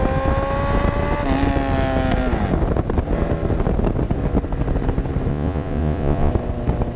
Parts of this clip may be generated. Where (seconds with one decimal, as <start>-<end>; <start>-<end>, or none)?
5.3-6.3